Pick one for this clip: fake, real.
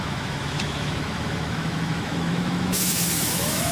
fake